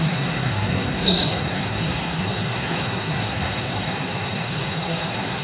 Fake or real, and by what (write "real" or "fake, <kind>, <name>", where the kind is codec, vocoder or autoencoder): fake, codec, SNAC